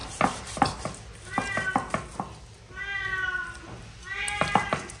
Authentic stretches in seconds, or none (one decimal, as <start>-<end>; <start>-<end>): 0.0-5.0

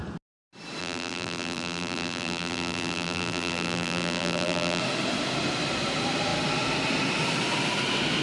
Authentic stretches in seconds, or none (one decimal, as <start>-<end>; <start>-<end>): 0.0-0.8; 4.8-8.2

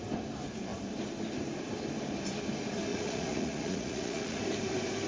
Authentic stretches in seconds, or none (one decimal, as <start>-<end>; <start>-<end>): 0.0-2.9; 4.4-5.1